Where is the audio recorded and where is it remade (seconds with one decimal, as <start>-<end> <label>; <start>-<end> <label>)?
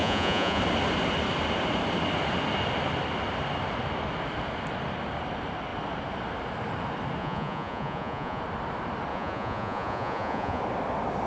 0.0-0.6 remade; 0.6-7.2 recorded; 7.2-8.4 remade; 8.4-9.1 recorded; 9.1-10.6 remade; 10.6-11.3 recorded